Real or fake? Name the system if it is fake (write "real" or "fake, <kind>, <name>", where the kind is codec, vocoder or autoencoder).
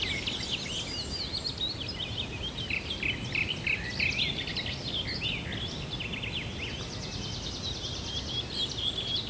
real